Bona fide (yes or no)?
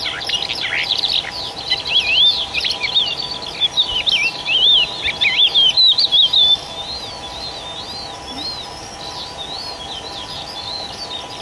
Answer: yes